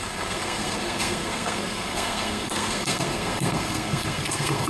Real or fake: fake